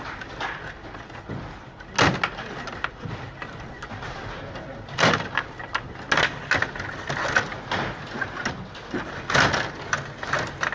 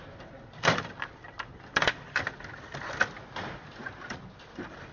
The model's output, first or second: second